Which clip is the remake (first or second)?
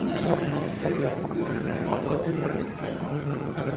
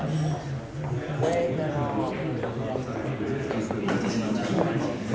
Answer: first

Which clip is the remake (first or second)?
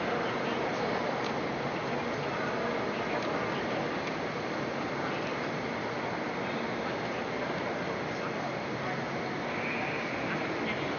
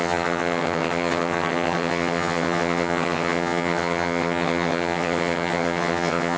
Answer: second